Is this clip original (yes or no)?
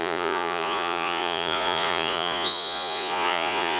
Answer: no